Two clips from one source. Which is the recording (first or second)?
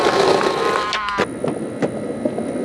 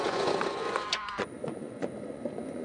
first